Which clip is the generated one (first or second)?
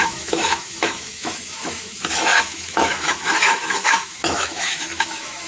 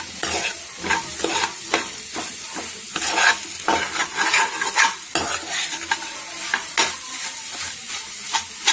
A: first